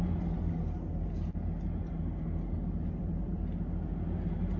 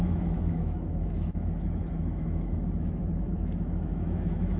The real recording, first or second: first